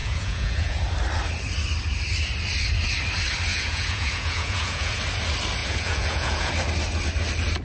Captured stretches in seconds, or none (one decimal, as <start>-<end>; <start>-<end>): 0.8-3.5; 5.0-5.6; 6.5-7.6